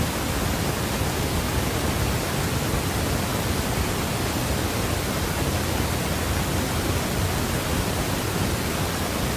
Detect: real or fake real